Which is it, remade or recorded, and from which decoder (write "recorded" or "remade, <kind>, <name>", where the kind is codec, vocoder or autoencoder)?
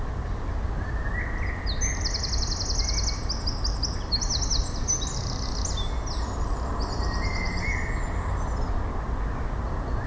recorded